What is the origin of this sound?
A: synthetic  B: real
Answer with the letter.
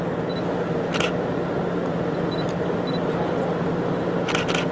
B